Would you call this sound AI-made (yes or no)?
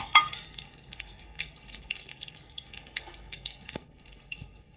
yes